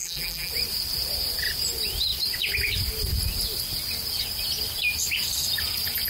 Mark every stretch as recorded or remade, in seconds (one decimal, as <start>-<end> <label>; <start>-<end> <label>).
0.0-0.5 remade; 0.5-6.1 recorded

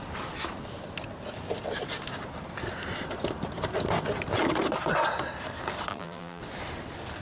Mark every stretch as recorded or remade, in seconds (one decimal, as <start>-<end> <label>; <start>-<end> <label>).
0.0-5.9 recorded; 5.9-6.4 remade; 6.4-7.2 recorded